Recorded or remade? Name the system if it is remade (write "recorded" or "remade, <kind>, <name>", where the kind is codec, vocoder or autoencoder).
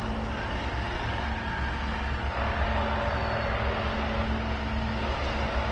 recorded